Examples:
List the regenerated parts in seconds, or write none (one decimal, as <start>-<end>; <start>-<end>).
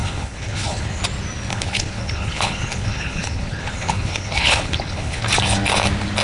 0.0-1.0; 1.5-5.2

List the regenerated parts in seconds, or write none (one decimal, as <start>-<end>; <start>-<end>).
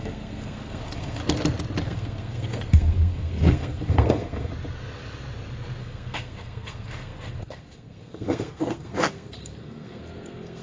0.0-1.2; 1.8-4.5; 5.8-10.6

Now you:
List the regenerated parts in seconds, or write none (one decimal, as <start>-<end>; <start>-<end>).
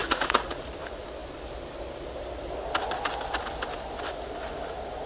0.0-0.7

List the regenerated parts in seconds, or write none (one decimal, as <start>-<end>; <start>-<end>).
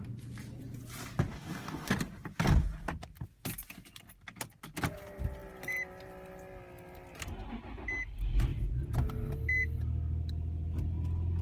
1.3-1.9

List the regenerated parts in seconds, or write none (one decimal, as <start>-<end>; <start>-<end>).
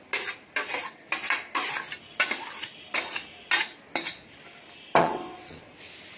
5.0-5.8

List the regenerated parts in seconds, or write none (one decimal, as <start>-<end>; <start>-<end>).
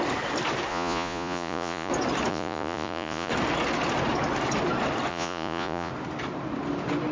0.7-1.9; 2.3-3.3; 5.1-5.9